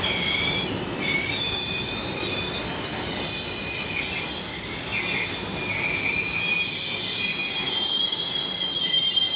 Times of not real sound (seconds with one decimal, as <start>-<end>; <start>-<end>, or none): none

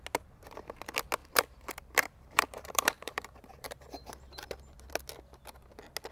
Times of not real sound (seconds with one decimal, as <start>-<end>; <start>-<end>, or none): 1.2-4.9